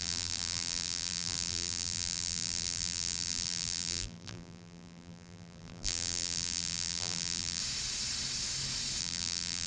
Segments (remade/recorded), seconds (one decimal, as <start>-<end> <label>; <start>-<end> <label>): 0.0-7.6 remade; 7.6-9.0 recorded; 9.0-9.7 remade